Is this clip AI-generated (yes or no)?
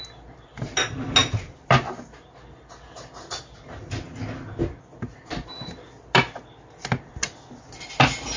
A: no